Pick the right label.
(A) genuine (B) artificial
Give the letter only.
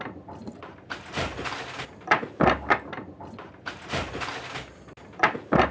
A